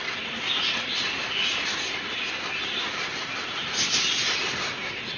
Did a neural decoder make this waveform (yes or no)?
no